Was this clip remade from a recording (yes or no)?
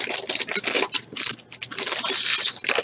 no